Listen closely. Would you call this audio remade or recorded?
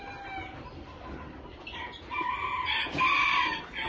recorded